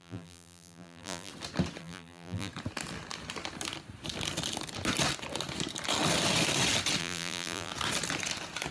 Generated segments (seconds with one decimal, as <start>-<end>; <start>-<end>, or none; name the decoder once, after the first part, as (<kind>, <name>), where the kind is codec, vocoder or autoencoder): 0.0-1.3 (vocoder, BigVGAN v2); 1.8-2.5; 7.0-7.7